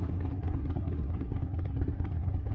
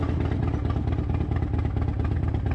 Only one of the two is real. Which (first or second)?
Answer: second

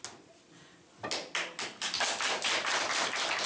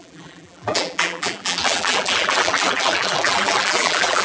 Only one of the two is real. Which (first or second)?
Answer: first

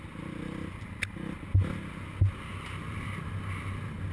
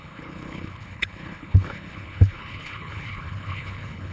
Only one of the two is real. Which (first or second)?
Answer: first